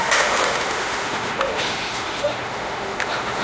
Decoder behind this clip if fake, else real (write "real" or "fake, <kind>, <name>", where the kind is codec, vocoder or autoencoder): fake, autoencoder, DAC-VAE